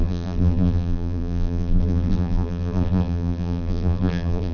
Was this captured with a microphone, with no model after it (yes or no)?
no